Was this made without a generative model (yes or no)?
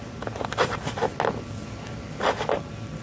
yes